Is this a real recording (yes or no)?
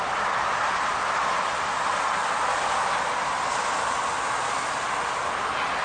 yes